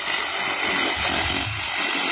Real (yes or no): yes